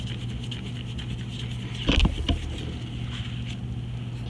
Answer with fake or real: real